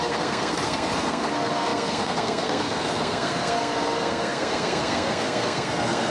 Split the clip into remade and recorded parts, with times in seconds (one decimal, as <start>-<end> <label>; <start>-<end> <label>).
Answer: 0.0-6.1 remade